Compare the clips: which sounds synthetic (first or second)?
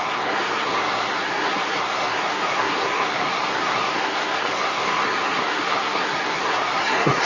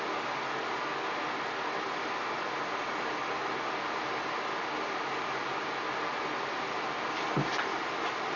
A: first